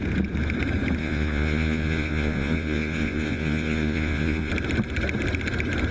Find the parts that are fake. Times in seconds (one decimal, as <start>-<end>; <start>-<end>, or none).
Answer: 1.0-4.5